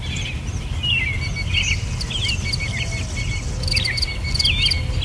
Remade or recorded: recorded